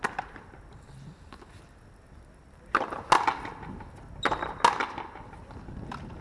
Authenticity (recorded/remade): recorded